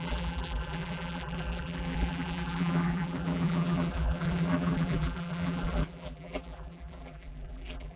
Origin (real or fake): fake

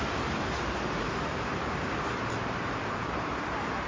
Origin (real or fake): fake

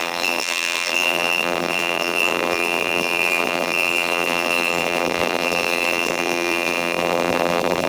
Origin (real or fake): fake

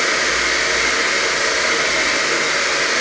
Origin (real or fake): real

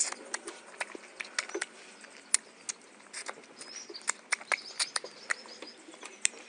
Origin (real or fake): real